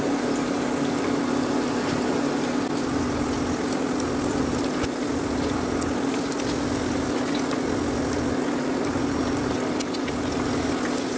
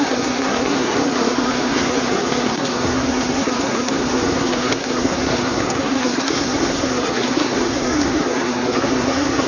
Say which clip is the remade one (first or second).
second